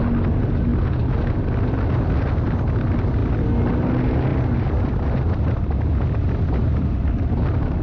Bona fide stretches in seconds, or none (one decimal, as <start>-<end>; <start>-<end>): 0.0-7.8